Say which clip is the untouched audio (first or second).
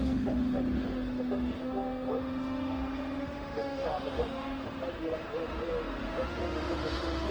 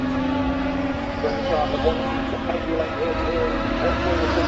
second